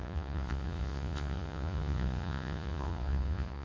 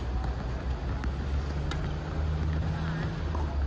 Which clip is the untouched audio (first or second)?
second